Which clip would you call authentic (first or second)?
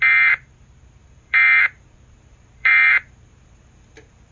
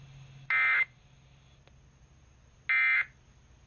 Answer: second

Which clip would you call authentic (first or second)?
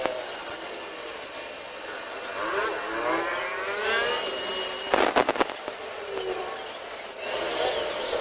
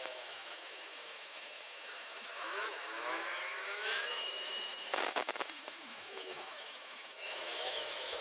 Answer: first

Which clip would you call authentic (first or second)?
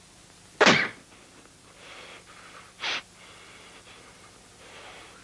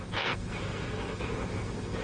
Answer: first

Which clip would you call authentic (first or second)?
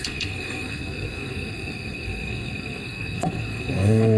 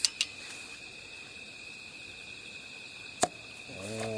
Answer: second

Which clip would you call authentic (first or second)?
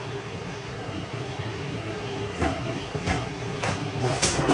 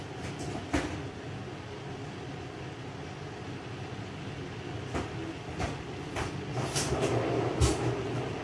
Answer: second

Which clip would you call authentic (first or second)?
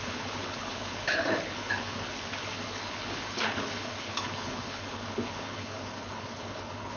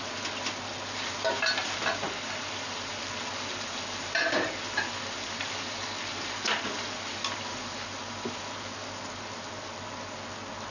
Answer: second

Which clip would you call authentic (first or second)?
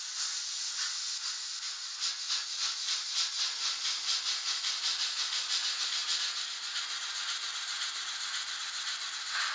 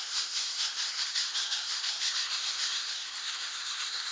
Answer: first